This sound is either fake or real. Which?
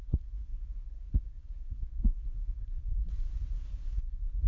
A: fake